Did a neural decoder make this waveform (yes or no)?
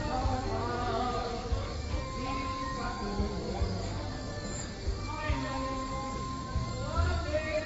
yes